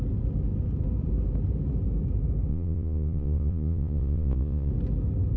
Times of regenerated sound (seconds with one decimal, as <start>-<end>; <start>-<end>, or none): 2.5-4.7

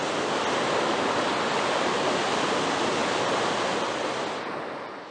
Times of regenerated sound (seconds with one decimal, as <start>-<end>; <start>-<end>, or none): none